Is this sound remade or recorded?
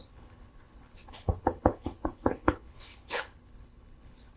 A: remade